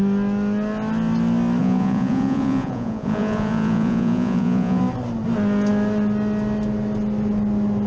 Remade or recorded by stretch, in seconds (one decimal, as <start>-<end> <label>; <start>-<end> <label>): 0.0-1.6 recorded; 1.6-4.8 remade; 4.8-7.9 recorded